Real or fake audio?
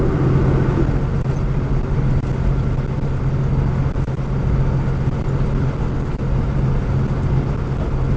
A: real